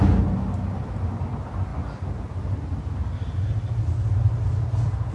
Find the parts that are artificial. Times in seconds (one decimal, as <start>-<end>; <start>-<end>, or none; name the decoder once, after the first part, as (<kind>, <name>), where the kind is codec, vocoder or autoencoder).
none